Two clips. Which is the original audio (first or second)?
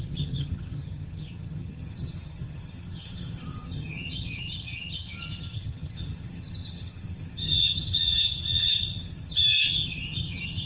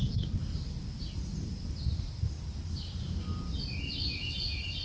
second